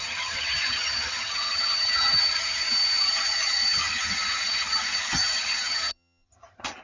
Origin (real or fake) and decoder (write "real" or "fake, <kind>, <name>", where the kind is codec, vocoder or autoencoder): fake, vocoder, HiFi-GAN